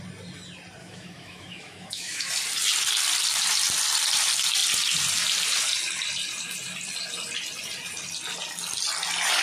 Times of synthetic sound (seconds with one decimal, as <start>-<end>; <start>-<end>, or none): 0.8-2.3